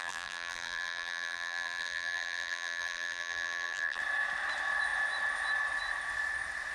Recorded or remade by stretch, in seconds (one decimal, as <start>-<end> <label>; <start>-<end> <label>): 0.0-4.0 remade; 4.0-6.7 recorded